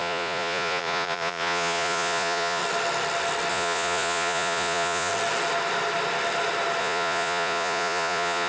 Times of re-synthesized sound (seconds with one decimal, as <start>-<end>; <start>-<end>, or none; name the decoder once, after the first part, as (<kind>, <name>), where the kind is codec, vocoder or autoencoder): 0.0-2.6 (vocoder, Vocos); 3.5-5.1; 6.8-8.5